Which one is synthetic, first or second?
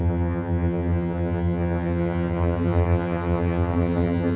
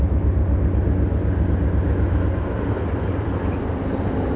first